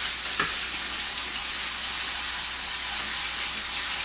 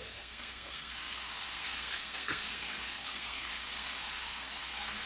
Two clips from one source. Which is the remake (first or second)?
second